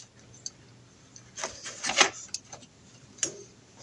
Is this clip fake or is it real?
real